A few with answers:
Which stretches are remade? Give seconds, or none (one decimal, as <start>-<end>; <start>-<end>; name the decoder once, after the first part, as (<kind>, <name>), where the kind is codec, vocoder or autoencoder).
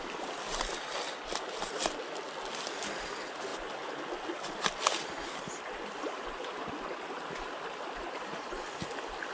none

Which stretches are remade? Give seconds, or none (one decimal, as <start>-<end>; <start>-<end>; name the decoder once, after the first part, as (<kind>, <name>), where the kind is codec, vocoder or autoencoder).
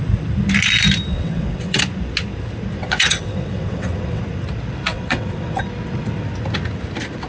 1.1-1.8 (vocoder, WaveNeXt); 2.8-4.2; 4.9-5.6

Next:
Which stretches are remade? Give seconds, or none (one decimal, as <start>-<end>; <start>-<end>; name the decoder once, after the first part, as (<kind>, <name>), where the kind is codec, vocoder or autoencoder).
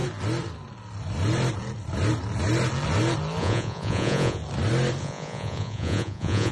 3.4-4.4 (vocoder, Vocos); 5.0-6.5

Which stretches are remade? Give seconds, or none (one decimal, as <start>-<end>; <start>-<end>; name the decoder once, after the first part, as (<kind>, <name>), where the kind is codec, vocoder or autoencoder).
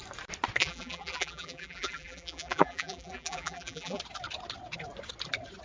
0.6-4.0 (vocoder, BigVGAN v2)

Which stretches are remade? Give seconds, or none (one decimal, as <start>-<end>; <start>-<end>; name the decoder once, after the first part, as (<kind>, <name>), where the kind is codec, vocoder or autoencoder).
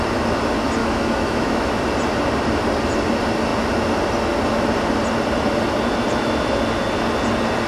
0.8-1.8 (autoencoder, DAC-VAE)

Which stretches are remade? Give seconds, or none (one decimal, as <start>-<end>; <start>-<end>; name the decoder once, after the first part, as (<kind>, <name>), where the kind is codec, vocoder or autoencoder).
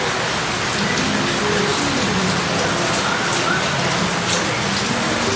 none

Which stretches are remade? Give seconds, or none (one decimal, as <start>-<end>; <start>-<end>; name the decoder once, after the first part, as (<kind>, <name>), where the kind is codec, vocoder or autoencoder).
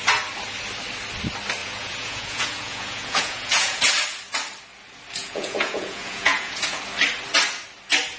1.6-3.8 (vocoder, Vocos); 5.2-6.8